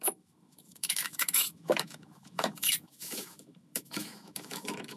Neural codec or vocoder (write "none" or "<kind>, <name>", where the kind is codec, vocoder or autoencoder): autoencoder, DAC-VAE